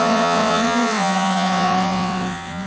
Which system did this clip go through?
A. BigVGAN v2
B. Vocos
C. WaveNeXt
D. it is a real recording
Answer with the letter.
C